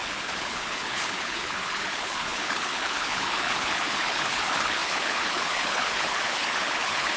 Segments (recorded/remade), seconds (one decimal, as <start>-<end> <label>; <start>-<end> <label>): 0.0-7.2 remade